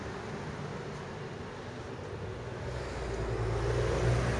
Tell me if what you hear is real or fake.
real